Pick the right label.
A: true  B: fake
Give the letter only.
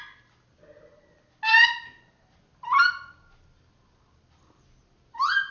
A